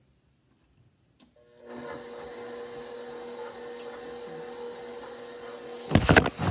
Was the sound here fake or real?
real